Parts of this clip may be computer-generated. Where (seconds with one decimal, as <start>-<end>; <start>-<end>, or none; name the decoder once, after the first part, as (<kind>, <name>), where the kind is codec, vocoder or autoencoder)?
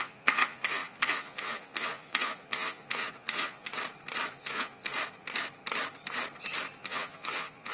0.0-3.7 (vocoder, Vocos); 4.3-4.9; 6.8-7.7